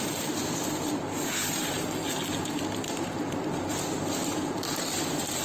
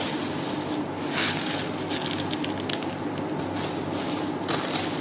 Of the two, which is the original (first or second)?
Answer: second